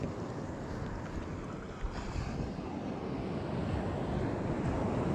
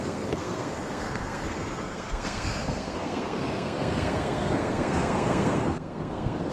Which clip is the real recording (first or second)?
first